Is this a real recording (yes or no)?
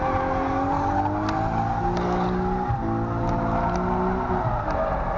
yes